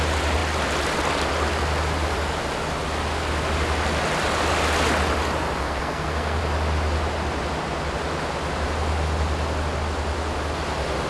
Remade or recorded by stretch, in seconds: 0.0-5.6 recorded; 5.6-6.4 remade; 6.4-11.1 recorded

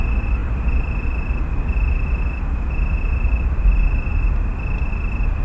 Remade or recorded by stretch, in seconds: 0.0-5.4 recorded